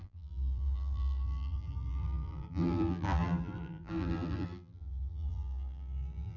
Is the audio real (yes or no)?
no